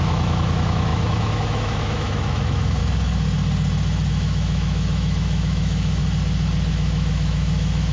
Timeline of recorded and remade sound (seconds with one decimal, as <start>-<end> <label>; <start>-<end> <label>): 0.0-2.8 remade; 2.8-4.1 recorded; 4.1-6.0 remade; 6.0-6.7 recorded; 6.7-7.9 remade